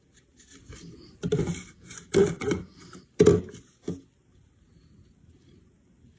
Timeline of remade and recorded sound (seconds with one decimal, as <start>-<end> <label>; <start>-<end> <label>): 0.0-2.2 recorded; 2.2-3.2 remade; 3.2-6.2 recorded